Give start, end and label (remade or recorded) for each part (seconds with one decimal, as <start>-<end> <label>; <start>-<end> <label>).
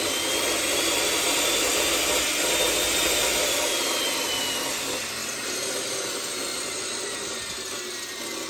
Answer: 0.0-6.5 recorded; 6.5-7.4 remade; 7.4-8.5 recorded